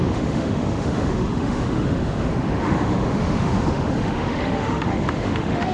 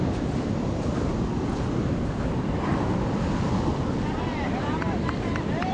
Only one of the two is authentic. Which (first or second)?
second